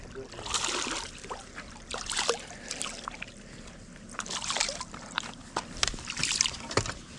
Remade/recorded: recorded